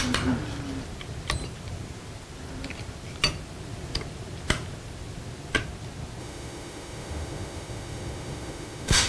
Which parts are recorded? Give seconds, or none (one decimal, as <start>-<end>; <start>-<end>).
0.0-6.2